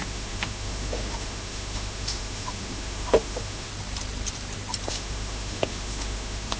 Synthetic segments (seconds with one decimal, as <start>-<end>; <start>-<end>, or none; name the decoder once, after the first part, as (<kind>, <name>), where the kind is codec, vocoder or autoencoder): 0.0-3.7 (autoencoder, DAC-VAE); 4.9-6.6